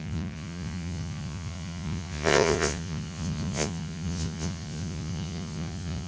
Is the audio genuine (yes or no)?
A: no